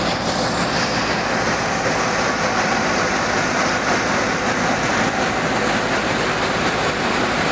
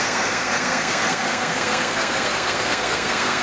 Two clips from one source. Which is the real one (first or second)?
first